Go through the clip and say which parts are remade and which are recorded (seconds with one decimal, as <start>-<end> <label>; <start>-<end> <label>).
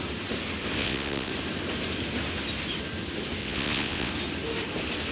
0.0-0.8 recorded; 0.8-1.3 remade; 1.3-3.4 recorded; 3.4-4.1 remade; 4.1-5.1 recorded